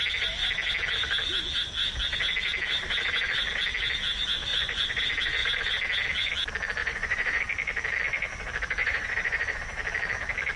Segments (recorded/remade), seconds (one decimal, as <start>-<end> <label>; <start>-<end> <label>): 0.0-4.5 recorded; 4.5-5.0 remade; 5.0-6.8 recorded; 6.8-7.4 remade; 7.4-8.8 recorded; 8.8-9.6 remade; 9.6-10.6 recorded